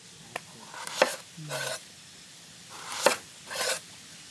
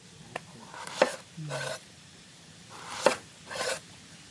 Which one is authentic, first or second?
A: first